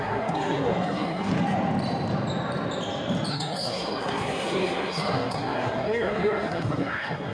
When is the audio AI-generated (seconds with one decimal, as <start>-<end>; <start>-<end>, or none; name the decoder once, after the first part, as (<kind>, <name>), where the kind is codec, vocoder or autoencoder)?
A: 0.0-1.3 (codec, SNAC); 3.3-7.3